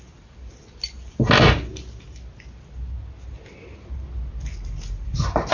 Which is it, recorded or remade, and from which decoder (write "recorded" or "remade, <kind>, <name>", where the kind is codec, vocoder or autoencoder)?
recorded